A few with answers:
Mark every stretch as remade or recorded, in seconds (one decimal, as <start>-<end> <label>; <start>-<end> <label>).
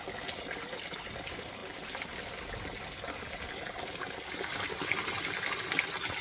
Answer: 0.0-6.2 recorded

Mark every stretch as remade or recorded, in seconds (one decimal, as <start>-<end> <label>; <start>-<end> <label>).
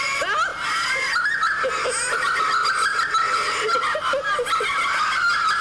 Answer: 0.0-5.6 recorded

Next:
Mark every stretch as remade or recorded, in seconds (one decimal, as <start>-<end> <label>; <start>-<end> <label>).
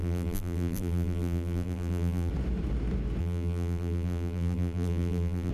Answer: 0.0-2.3 remade; 2.3-3.2 recorded; 3.2-5.5 remade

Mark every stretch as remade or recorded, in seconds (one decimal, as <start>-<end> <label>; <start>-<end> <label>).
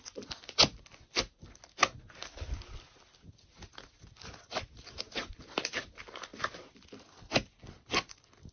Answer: 0.0-8.5 recorded